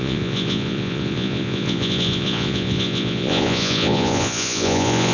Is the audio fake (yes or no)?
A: yes